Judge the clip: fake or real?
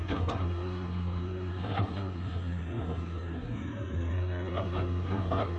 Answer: fake